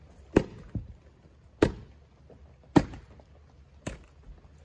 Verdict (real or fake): real